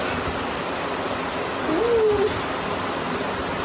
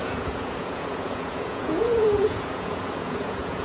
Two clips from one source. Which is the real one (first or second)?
first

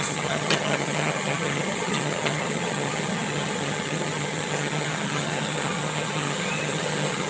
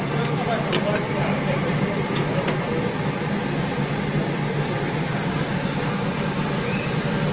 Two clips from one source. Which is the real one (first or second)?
second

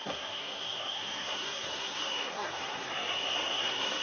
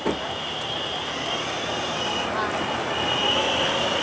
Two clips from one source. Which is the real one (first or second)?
second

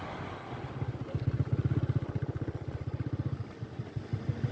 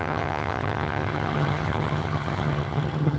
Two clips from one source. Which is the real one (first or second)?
first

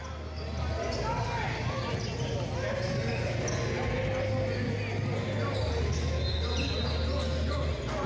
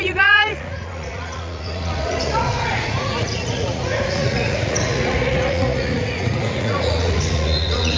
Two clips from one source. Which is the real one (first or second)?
first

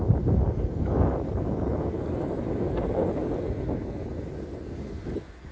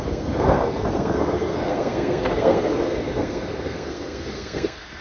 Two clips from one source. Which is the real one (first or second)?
first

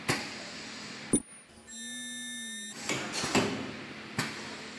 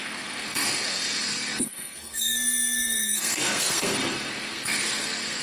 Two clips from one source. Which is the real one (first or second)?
first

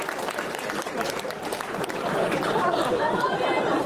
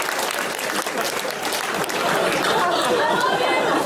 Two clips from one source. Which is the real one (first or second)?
second